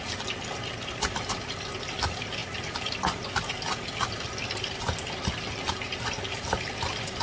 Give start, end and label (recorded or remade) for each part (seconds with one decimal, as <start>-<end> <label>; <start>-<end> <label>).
0.0-7.2 recorded